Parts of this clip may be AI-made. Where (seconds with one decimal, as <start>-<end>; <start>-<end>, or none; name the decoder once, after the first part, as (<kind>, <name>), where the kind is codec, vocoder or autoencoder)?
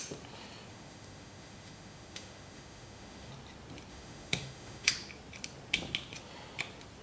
0.7-3.3 (autoencoder, DAC-VAE); 3.9-4.9